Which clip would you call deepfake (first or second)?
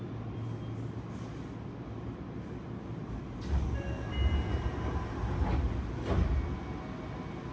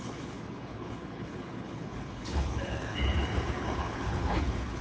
second